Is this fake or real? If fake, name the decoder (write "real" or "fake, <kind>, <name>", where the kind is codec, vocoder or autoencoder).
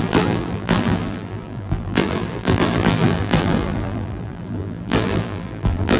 fake, vocoder, BigVGAN v2